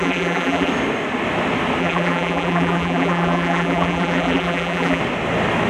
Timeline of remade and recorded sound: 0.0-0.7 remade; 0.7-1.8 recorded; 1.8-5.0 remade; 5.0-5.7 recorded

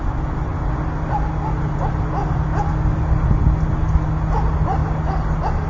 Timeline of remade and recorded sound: 0.0-5.7 recorded

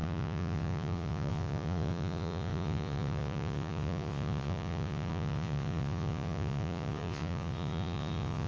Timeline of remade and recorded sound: 0.0-8.5 remade

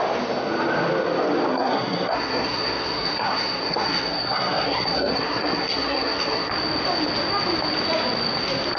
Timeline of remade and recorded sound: 0.0-1.5 recorded; 1.5-6.5 remade; 6.5-8.8 recorded

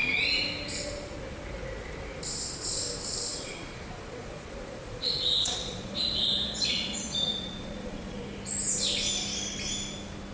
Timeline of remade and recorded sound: 0.0-3.3 recorded; 3.3-8.2 remade; 8.2-10.3 recorded

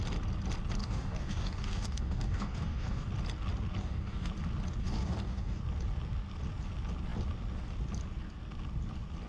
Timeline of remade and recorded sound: 0.0-0.8 recorded; 0.8-3.1 remade; 3.1-3.8 recorded; 3.8-4.3 remade; 4.3-4.8 recorded; 4.8-5.6 remade; 5.6-9.3 recorded

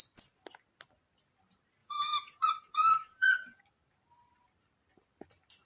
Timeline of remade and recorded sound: 0.0-1.8 recorded; 1.8-3.6 remade; 3.6-5.7 recorded

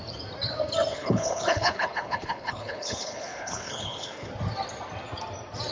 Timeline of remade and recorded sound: 0.0-0.9 recorded; 0.9-4.3 remade; 4.3-5.7 recorded